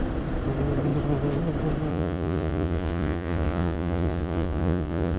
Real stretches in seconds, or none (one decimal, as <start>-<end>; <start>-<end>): 0.0-1.9

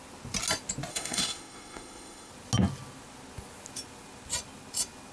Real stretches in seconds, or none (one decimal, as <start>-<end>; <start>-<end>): 0.0-0.9; 2.3-5.1

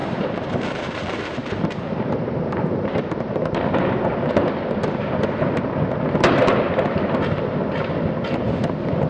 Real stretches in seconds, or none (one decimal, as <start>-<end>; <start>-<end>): 4.1-9.1

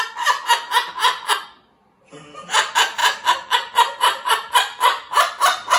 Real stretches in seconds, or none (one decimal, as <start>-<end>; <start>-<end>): 0.0-5.8

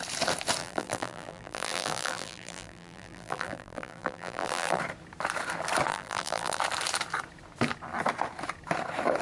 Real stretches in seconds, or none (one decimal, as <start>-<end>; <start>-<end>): 0.0-0.6; 4.8-5.9; 6.6-9.2